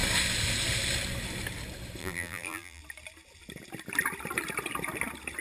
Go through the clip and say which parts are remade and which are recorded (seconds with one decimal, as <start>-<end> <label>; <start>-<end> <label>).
0.0-2.0 recorded; 2.0-2.8 remade; 2.8-5.4 recorded